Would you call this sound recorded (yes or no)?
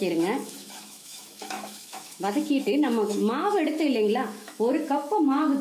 no